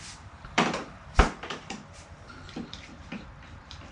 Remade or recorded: remade